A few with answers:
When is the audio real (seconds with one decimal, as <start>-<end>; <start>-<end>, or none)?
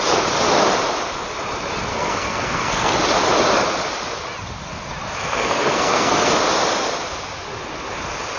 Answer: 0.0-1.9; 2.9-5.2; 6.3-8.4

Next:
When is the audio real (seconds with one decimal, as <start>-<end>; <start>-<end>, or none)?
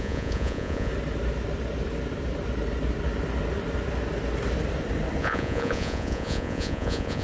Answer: 0.9-5.2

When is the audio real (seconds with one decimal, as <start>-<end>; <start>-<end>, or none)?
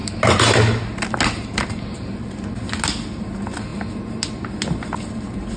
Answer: 0.0-5.6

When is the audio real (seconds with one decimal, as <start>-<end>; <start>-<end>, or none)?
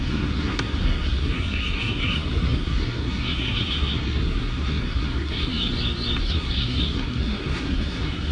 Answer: 5.7-6.2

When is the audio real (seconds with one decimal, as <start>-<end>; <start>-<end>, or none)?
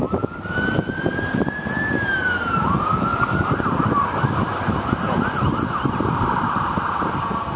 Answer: 0.0-7.6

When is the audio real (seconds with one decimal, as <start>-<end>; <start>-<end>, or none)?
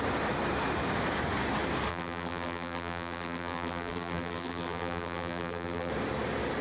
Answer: 0.0-1.9; 5.9-6.6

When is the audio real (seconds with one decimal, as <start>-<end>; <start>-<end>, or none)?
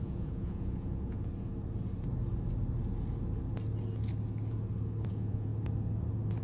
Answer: 1.3-5.1; 5.5-6.4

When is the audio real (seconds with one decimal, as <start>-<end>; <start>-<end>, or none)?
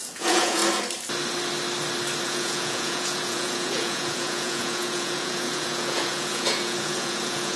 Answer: 0.6-2.2